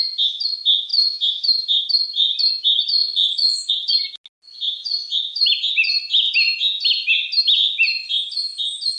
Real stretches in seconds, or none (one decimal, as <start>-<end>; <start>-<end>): 0.0-3.0; 3.7-9.0